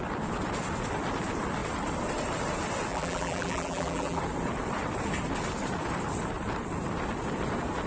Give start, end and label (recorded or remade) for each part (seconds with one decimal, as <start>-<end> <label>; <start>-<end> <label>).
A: 0.0-2.9 recorded; 2.9-4.2 remade; 4.2-7.9 recorded